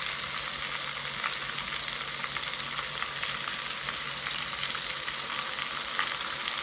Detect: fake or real real